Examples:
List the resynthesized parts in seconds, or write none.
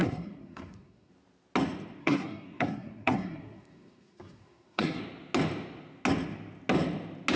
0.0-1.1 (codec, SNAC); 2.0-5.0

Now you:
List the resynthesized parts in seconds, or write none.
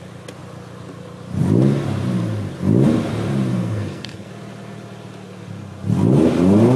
3.5-4.3 (codec, SNAC)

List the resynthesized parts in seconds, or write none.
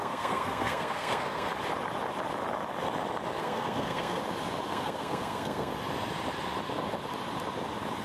0.0-1.5 (codec, SNAC); 3.4-4.2; 4.7-5.7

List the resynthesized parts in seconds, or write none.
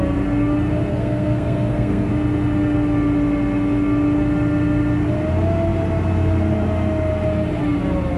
0.9-2.1 (codec, SNAC)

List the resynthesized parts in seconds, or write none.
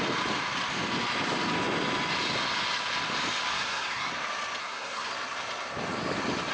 3.5-4.1 (codec, SNAC); 4.6-5.1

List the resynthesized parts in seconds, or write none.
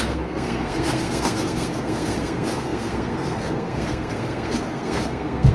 0.0-5.5 (codec, SNAC)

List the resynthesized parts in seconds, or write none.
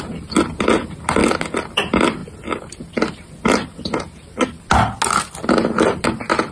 none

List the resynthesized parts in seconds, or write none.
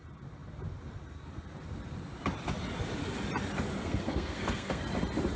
3.8-4.8 (codec, SNAC)